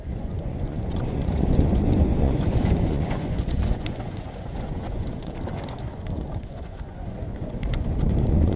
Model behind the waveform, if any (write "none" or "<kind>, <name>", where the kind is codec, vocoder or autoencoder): vocoder, Vocos